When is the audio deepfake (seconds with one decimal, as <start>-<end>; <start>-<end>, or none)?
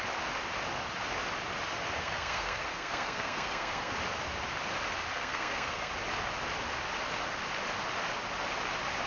2.0-3.9; 5.1-5.9